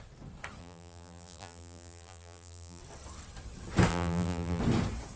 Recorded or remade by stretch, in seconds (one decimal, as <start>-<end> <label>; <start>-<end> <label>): 0.0-0.6 recorded; 0.6-2.8 remade; 2.8-3.9 recorded; 3.9-4.6 remade; 4.6-5.2 recorded

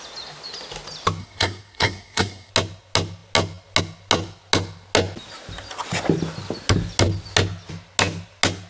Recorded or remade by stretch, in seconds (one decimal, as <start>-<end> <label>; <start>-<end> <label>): 0.0-1.2 recorded; 1.2-2.5 remade; 2.5-8.7 recorded

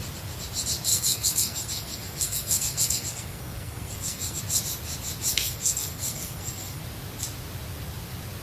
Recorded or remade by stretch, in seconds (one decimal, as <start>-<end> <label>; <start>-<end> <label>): 0.0-0.9 recorded; 0.9-4.4 remade; 4.4-5.3 recorded; 5.3-6.8 remade; 6.8-8.4 recorded